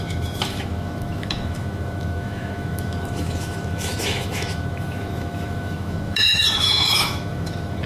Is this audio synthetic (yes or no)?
yes